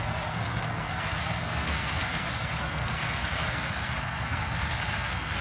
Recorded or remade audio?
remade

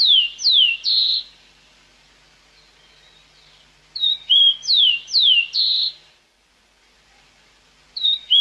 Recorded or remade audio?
recorded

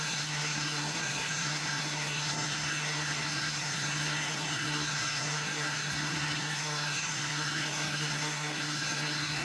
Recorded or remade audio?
remade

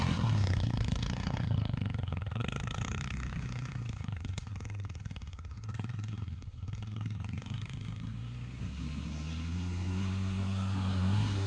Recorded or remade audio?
remade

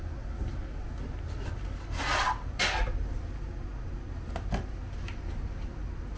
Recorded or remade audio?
recorded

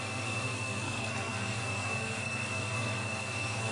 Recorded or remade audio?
remade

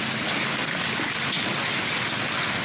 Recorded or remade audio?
recorded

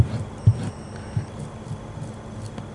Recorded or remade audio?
recorded